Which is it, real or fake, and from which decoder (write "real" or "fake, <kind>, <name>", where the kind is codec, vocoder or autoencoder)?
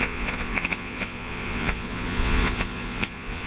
fake, vocoder, Vocos